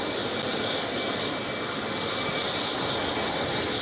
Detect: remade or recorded recorded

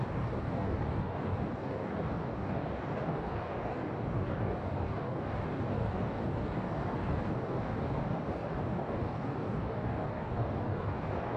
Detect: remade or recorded remade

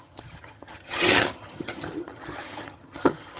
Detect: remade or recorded remade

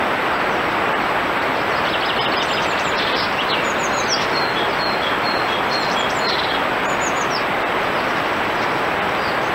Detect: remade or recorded recorded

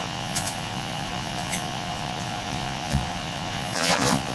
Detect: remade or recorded remade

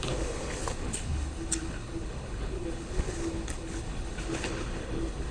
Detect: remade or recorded remade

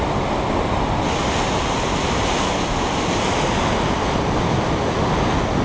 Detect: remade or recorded recorded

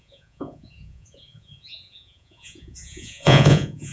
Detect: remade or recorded remade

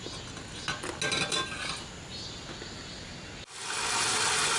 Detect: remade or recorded recorded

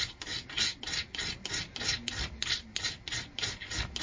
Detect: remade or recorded recorded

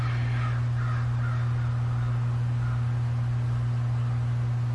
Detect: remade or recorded recorded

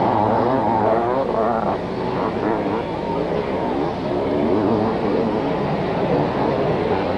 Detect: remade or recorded recorded